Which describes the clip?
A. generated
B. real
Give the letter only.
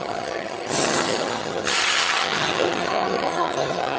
A